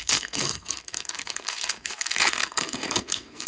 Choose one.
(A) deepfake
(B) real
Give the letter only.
A